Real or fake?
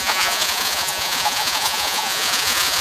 fake